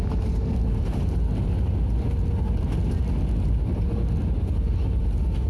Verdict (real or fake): real